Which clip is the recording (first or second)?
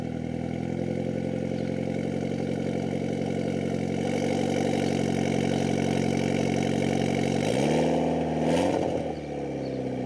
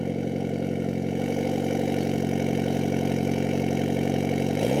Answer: first